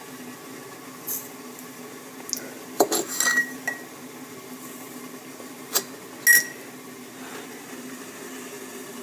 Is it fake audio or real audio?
real